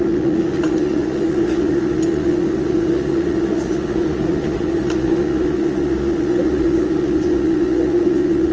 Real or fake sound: fake